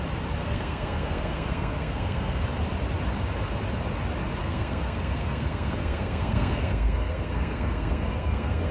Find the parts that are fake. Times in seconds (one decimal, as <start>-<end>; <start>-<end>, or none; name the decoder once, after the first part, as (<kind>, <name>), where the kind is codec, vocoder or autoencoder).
0.4-2.4 (codec, SNAC); 4.4-8.7